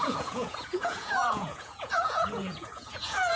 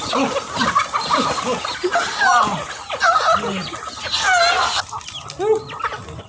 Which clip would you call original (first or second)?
second